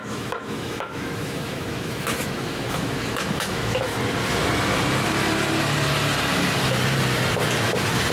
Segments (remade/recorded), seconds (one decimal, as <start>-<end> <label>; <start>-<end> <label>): 0.0-3.9 remade; 3.9-8.1 recorded